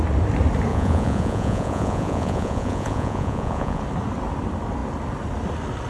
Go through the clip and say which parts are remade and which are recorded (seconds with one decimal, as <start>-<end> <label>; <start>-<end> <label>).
0.0-0.7 recorded; 0.7-3.8 remade; 3.8-5.9 recorded